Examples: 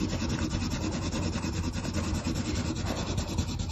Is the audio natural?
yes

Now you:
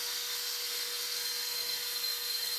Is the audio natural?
no